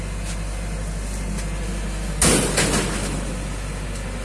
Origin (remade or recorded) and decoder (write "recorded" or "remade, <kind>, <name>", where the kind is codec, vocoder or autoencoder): recorded